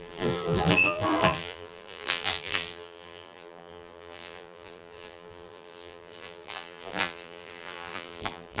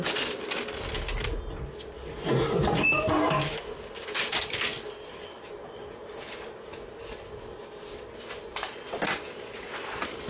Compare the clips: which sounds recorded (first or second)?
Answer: second